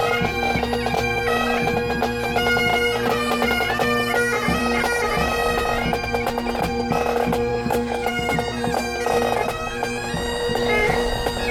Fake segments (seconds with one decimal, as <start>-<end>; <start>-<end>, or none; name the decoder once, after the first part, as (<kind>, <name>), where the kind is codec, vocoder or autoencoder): 7.5-8.1 (codec, DAC); 10.5-11.1